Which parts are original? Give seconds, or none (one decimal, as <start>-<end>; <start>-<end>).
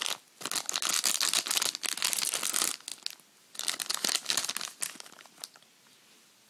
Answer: 0.0-6.5